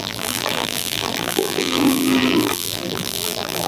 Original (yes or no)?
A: no